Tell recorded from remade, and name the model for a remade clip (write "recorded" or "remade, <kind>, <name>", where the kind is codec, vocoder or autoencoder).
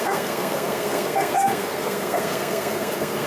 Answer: remade, codec, SNAC